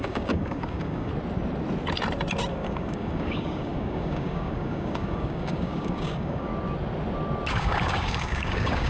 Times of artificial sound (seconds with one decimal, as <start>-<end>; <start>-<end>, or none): 0.0-1.1; 2.5-6.5; 7.5-8.9